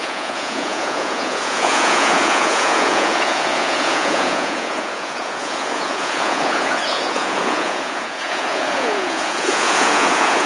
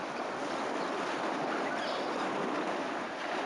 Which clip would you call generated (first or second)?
first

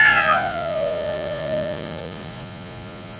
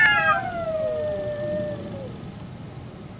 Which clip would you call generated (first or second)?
first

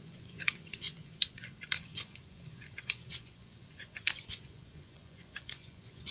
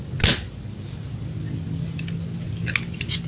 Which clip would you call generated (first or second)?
first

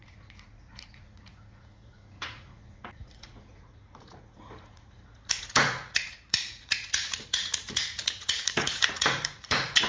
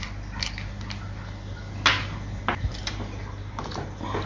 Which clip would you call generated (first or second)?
first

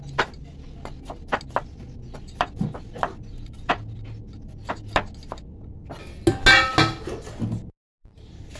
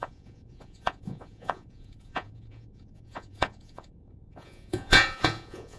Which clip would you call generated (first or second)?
second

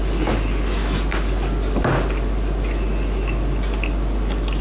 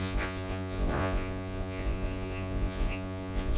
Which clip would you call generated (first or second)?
second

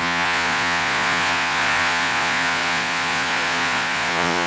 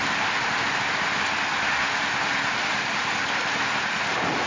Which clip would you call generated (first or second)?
first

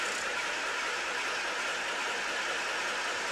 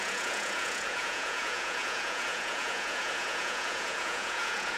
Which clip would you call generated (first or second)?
second